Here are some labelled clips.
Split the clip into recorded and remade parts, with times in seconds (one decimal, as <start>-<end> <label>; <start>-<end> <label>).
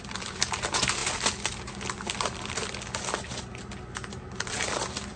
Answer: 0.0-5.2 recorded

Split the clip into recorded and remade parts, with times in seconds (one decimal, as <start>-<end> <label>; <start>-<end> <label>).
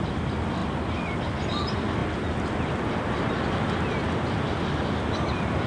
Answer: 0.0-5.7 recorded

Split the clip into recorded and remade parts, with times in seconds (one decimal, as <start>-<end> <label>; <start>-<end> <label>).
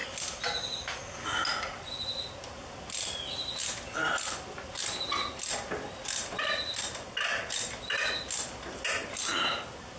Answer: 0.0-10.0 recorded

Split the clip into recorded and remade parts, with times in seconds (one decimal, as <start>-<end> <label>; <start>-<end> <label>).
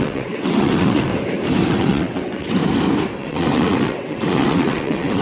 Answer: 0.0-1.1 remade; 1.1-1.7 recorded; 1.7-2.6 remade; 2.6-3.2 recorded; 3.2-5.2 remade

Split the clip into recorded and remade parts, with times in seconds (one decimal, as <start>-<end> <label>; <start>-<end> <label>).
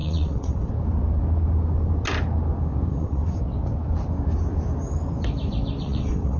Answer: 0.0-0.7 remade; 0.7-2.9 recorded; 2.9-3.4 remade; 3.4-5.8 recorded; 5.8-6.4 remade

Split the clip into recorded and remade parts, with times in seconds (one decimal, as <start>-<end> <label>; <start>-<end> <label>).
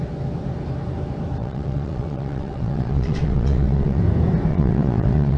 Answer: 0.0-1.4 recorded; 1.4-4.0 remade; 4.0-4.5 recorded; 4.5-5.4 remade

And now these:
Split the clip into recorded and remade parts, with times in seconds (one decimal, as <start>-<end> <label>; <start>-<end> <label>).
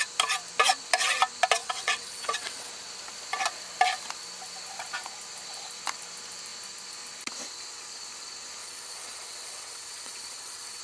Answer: 0.0-1.6 recorded; 1.6-2.7 remade; 2.7-8.6 recorded; 8.6-10.8 remade